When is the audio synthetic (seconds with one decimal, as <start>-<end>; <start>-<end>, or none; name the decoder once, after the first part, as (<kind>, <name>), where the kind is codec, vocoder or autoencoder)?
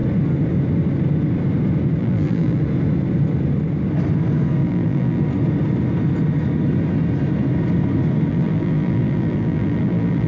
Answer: 2.0-2.6 (vocoder, BigVGAN v2); 4.6-5.2; 8.3-10.3